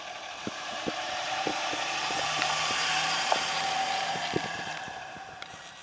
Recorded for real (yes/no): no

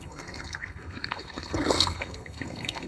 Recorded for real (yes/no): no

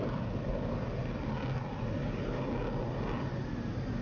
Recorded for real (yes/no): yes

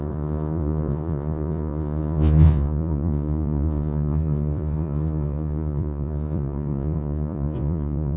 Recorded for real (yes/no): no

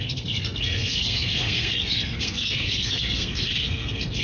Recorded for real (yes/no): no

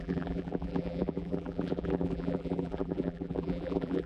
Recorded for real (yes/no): no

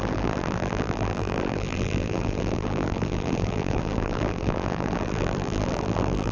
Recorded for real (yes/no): no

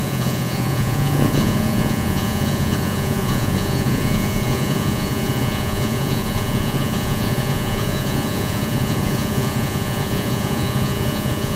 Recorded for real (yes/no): no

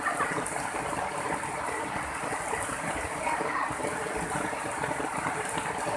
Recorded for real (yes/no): yes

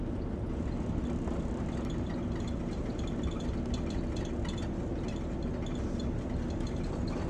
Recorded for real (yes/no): yes